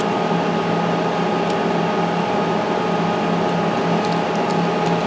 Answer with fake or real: real